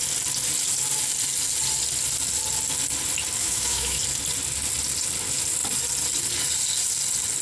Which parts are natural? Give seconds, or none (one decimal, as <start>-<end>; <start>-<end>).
0.0-3.4; 4.0-7.4